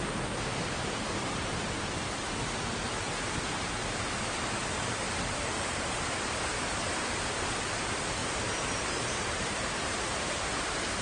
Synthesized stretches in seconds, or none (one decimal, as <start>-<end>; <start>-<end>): 4.6-6.5; 8.2-10.2